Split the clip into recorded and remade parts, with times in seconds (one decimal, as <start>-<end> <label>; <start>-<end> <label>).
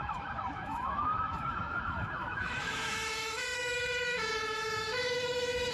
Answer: 0.0-5.7 remade